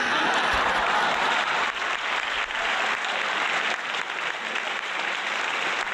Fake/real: real